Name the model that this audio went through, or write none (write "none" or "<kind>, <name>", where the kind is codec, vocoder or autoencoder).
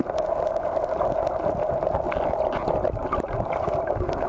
none